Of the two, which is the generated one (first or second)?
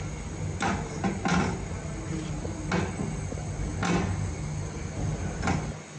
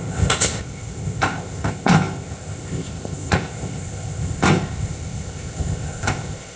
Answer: second